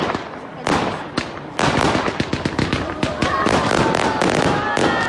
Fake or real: real